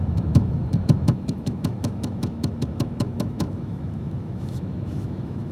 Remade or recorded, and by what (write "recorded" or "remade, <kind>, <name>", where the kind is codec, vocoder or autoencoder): remade, autoencoder, DAC-VAE